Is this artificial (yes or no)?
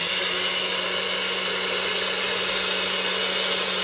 no